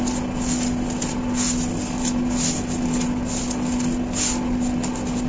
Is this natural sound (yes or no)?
yes